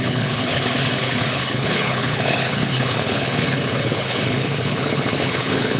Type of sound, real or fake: fake